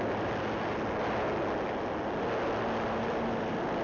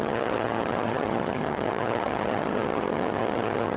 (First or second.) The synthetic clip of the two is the second